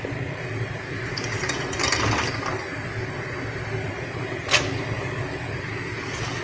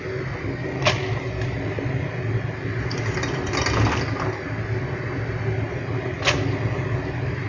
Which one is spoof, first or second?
first